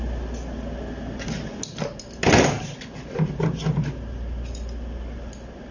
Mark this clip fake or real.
real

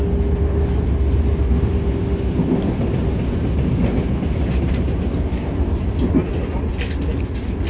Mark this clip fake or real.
real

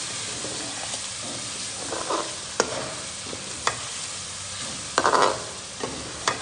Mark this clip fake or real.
real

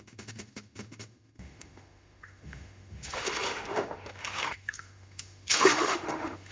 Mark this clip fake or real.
fake